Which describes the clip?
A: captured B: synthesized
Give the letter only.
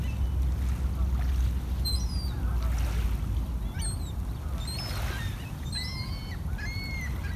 A